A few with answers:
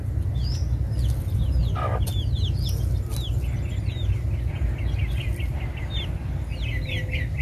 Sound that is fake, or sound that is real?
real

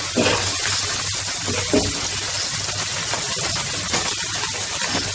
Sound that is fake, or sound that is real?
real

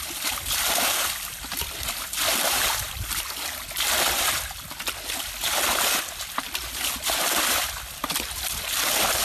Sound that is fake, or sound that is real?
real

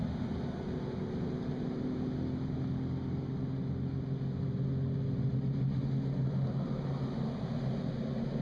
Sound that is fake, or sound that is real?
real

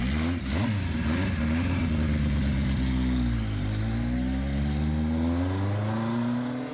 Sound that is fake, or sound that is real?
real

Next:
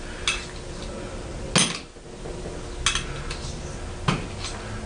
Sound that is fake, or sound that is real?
real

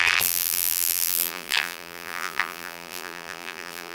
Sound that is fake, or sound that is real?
fake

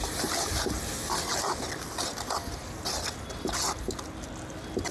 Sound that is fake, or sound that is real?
real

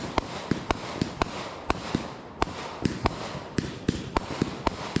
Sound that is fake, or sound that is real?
real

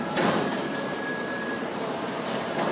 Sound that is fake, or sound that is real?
fake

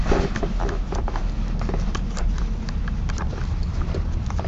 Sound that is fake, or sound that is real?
fake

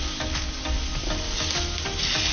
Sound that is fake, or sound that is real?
real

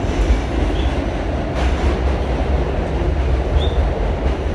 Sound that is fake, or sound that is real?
real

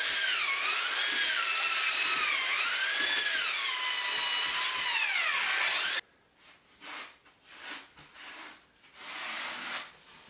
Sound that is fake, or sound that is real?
real